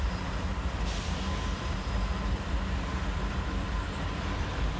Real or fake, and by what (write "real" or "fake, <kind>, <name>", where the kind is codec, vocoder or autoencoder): fake, vocoder, BigVGAN v2